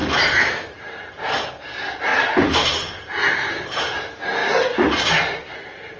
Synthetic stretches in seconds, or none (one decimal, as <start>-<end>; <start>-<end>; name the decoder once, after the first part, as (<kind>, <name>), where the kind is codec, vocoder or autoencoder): 0.0-1.5 (vocoder, BigVGAN v2); 2.1-4.0

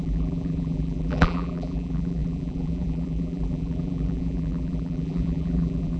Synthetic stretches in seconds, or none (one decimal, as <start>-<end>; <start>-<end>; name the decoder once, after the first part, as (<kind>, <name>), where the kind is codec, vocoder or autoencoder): 0.0-6.0 (vocoder, BigVGAN v2)

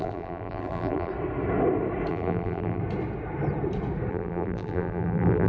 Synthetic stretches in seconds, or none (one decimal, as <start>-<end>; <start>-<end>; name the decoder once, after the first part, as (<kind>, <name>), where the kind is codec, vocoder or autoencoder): 0.0-1.1 (vocoder, BigVGAN v2); 2.1-2.8; 4.1-5.5

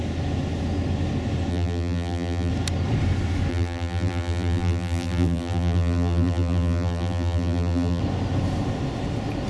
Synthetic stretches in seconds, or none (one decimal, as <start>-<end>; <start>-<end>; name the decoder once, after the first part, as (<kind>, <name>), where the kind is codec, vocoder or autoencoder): 1.5-2.5 (vocoder, BigVGAN v2); 3.5-8.0

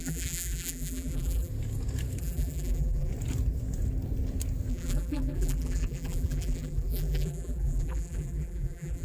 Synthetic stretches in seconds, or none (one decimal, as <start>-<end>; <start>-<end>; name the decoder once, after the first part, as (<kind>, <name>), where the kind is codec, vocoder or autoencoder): 0.0-1.5 (vocoder, BigVGAN v2); 2.2-3.1; 4.7-9.0